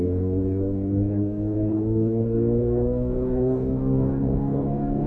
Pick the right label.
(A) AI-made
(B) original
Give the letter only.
A